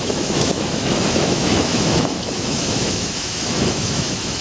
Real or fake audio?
fake